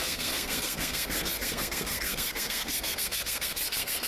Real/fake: fake